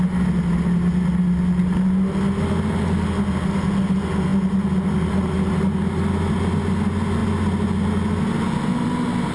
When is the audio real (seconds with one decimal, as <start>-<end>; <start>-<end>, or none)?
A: 0.0-9.3